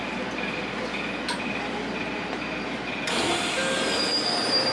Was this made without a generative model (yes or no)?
yes